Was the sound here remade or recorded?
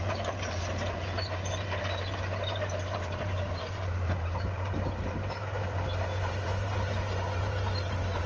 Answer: remade